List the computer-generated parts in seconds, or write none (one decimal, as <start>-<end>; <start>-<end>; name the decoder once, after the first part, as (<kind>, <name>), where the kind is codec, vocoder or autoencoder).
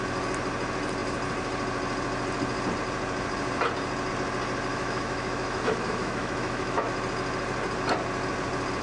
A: 4.7-6.9 (autoencoder, DAC-VAE)